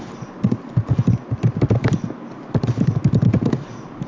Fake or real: real